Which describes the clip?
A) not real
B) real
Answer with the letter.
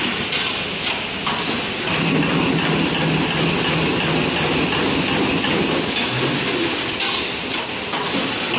B